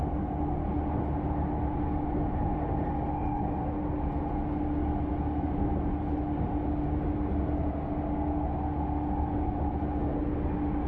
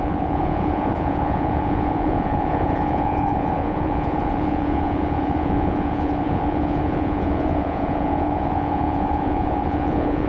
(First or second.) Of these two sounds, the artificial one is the second